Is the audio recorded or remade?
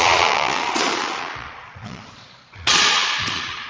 remade